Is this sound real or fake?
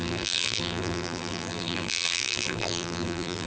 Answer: fake